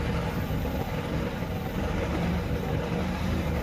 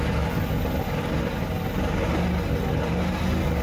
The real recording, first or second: second